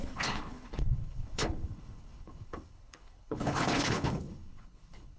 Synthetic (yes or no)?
yes